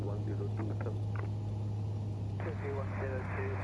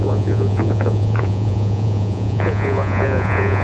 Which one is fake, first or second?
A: second